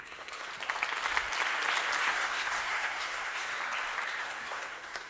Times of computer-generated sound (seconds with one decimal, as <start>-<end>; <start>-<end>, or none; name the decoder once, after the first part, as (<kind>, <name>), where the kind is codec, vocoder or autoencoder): 0.0-0.5 (codec, SNAC); 2.0-3.5; 4.2-5.1